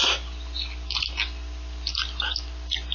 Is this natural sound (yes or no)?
yes